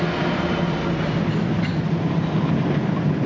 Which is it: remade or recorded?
recorded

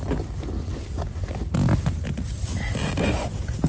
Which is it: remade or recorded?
recorded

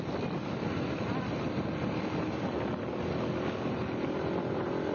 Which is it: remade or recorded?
recorded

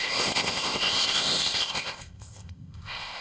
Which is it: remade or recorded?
remade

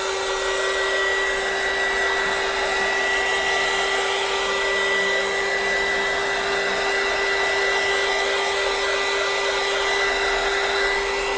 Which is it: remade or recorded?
recorded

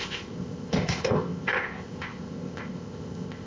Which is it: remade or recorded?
remade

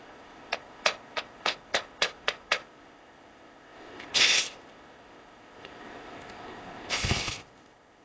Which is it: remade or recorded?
remade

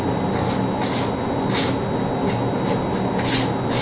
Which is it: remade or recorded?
recorded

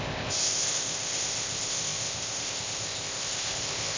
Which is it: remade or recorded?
remade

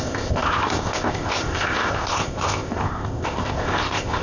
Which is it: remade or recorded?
remade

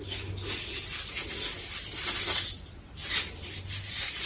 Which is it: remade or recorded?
recorded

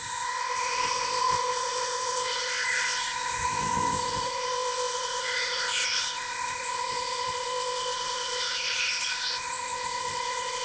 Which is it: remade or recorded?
remade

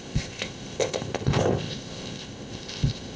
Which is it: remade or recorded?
remade